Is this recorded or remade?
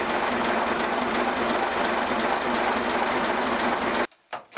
recorded